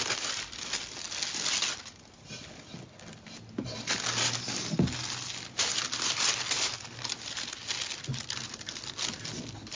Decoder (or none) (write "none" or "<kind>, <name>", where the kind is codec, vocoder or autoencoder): none